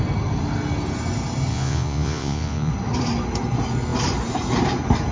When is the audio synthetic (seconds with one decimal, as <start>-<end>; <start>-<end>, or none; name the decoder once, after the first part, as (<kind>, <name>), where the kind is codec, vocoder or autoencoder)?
1.5-2.7 (vocoder, Vocos)